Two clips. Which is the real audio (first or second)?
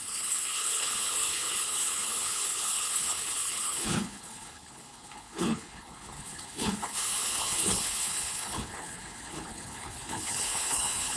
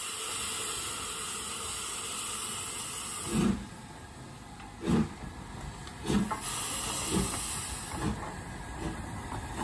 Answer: second